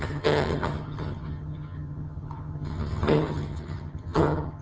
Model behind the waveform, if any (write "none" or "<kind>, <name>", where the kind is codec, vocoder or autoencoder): vocoder, HiFi-GAN